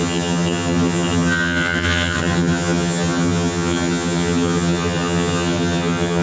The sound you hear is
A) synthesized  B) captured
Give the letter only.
A